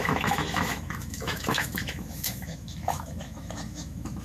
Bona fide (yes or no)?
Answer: no